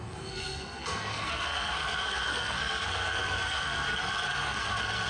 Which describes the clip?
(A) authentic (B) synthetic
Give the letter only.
B